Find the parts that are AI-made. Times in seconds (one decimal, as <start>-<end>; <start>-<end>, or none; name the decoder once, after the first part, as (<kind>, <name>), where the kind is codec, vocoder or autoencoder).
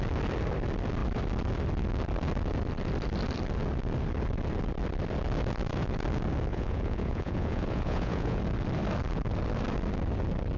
6.5-8.4 (vocoder, Vocos)